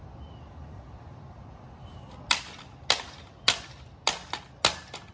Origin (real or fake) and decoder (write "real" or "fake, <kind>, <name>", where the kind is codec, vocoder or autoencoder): real